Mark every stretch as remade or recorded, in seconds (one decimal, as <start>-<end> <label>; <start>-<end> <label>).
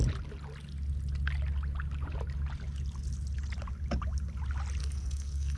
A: 0.0-4.8 recorded; 4.8-5.6 remade